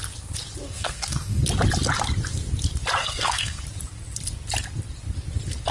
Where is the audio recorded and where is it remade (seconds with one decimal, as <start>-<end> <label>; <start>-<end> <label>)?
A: 0.0-0.7 recorded; 0.7-1.4 remade; 1.4-3.0 recorded; 3.0-3.6 remade; 3.6-5.7 recorded